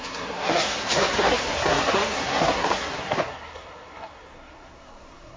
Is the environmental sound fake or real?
fake